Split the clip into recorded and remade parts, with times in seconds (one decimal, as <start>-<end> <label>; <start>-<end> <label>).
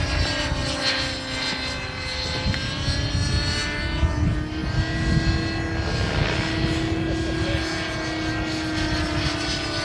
0.0-9.8 recorded